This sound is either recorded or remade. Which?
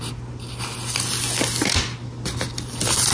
recorded